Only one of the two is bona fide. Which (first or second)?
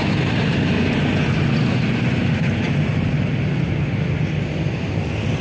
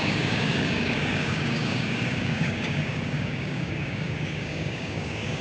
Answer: first